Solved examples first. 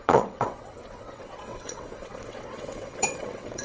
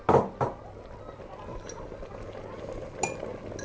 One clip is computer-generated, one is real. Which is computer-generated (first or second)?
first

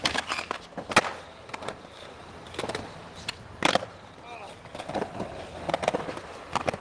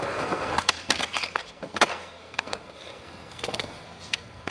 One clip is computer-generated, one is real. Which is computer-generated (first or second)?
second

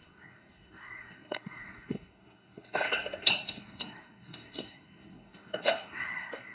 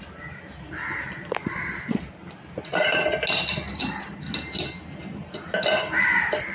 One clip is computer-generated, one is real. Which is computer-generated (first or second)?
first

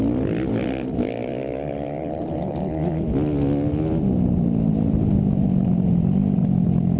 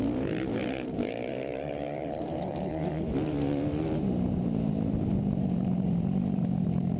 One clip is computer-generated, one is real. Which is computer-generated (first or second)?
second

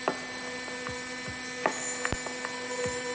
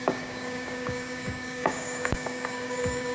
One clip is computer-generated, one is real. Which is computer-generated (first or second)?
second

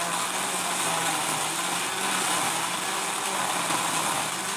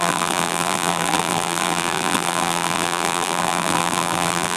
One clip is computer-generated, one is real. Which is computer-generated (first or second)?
second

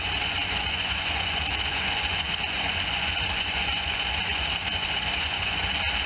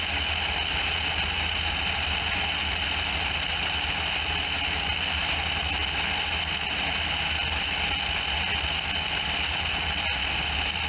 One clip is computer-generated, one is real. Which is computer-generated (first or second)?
first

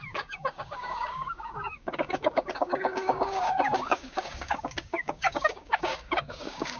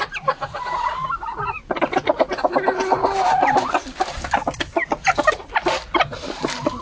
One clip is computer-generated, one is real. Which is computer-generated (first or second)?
first